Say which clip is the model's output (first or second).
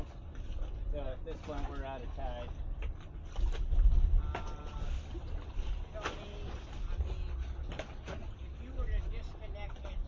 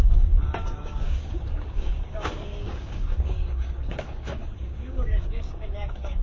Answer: second